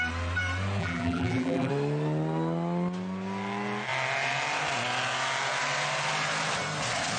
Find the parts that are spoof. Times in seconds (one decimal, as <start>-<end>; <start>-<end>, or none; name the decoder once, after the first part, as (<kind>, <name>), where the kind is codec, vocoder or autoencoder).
0.8-1.7 (vocoder, BigVGAN v2)